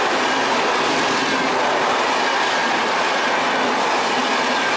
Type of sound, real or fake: real